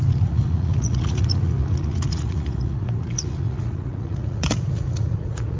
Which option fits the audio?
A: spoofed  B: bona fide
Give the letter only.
A